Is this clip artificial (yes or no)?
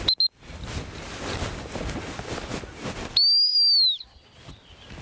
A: no